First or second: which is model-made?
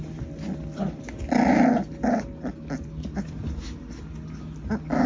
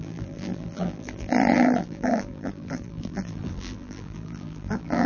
second